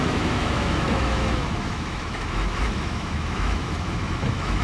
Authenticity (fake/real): fake